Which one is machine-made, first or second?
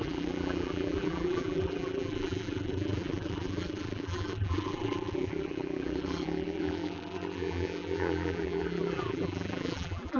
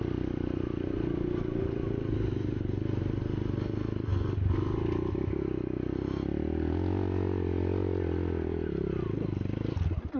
first